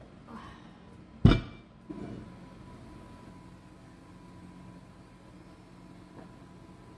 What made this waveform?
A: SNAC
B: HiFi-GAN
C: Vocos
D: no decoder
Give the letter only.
D